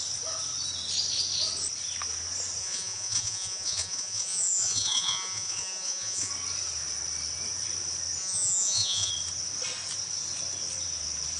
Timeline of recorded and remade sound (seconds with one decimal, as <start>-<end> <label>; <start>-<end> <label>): 0.0-2.6 recorded; 2.6-6.3 remade; 6.3-8.2 recorded; 8.2-9.1 remade; 9.1-11.4 recorded